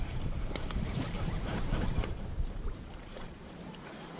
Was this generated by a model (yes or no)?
yes